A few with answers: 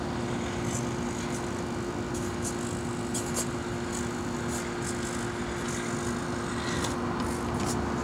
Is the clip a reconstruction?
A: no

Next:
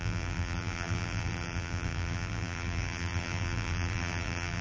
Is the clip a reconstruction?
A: yes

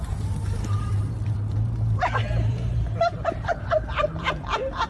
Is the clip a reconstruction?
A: yes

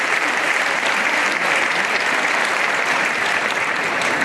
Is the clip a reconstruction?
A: yes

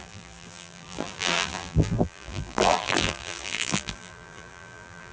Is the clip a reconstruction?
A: yes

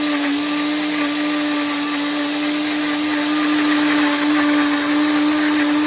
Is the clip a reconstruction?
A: no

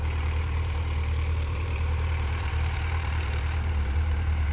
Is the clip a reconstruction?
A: yes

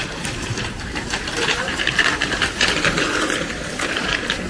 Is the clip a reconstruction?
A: yes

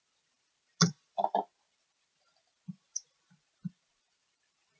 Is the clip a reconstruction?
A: no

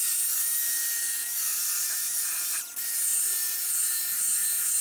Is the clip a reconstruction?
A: no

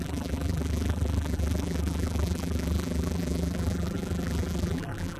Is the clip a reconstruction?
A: yes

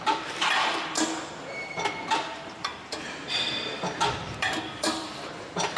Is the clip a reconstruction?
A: yes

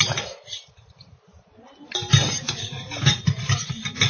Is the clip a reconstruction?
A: yes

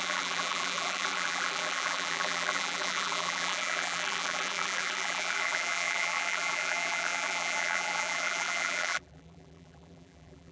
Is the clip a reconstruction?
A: yes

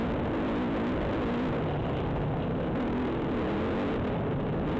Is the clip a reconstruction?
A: no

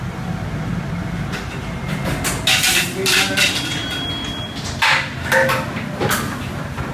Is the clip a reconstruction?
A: no